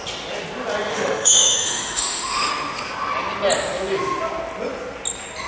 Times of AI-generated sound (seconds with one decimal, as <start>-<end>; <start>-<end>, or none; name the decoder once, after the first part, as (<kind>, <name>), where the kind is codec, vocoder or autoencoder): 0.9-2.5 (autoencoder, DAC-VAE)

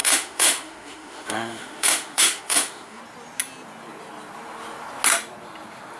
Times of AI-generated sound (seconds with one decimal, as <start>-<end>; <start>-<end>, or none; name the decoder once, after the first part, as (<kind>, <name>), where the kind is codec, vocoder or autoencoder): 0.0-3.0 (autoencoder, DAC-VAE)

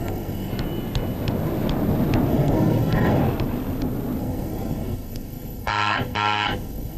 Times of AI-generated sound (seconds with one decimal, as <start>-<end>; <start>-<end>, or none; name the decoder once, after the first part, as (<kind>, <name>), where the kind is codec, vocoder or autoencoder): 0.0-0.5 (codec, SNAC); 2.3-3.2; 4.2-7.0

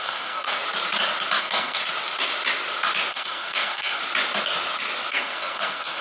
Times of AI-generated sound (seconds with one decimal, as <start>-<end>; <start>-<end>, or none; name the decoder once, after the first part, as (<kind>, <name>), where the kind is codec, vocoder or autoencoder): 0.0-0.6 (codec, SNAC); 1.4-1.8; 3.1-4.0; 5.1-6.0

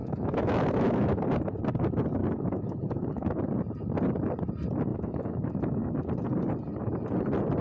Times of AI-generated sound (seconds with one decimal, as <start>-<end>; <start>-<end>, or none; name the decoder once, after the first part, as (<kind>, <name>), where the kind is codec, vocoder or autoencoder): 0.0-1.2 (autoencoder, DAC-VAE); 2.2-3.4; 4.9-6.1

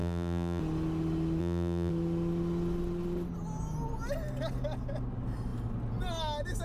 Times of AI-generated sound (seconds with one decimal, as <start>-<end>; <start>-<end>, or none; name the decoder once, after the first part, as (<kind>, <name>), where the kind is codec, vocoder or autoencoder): 0.0-0.6 (vocoder, BigVGAN v2); 1.4-1.9

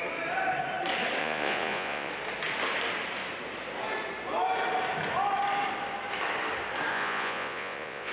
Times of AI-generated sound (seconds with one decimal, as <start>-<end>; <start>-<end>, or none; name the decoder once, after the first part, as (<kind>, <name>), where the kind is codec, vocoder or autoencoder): 1.2-2.1 (vocoder, Vocos); 6.9-8.1

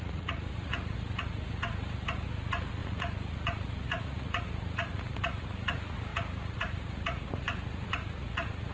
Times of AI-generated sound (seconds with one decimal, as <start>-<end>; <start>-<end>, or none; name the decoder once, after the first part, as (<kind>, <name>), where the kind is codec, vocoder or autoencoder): 0.0-8.7 (vocoder, Vocos)